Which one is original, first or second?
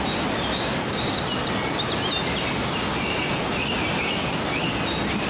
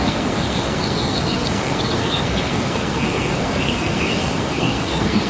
first